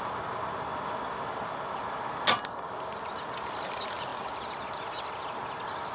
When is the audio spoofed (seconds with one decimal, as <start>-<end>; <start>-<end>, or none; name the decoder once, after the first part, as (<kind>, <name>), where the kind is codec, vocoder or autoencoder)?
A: none